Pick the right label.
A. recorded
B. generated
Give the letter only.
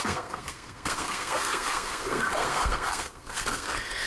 B